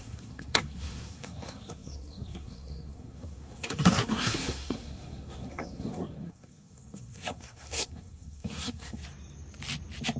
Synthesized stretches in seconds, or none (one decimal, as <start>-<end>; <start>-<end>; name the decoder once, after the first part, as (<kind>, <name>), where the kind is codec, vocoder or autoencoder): 0.0-9.0 (codec, SNAC)